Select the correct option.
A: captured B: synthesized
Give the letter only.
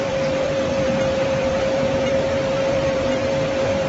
B